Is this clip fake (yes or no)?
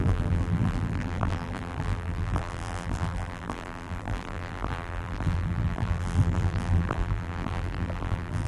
yes